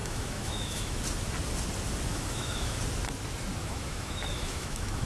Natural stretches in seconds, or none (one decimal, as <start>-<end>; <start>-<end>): 1.0-2.1; 2.8-3.6